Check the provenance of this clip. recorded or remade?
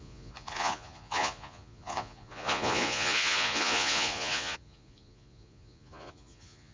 remade